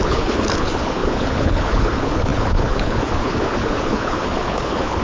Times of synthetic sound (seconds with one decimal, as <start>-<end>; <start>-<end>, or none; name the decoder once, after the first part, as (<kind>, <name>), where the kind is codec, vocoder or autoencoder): 0.0-5.0 (codec, HILCodec)